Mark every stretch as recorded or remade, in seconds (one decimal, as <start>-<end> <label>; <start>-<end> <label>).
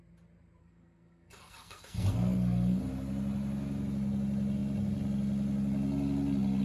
0.0-0.6 recorded; 0.6-2.8 remade; 2.8-6.6 recorded